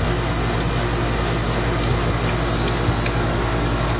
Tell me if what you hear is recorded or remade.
recorded